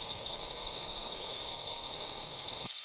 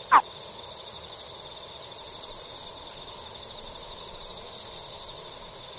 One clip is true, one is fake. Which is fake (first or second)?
first